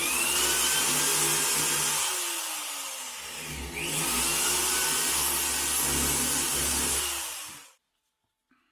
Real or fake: real